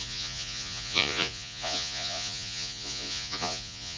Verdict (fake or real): fake